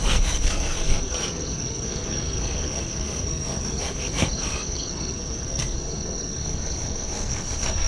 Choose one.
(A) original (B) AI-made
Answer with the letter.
B